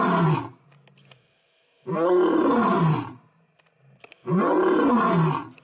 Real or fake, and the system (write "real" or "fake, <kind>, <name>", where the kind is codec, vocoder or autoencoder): real